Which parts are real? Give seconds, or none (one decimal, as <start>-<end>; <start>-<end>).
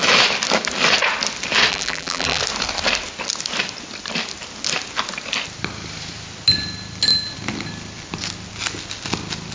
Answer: 0.0-1.7; 2.4-9.5